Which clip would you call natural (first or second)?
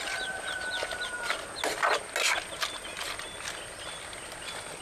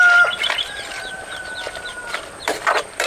first